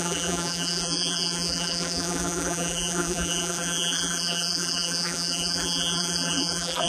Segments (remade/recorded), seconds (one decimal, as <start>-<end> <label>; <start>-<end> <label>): 0.0-6.9 remade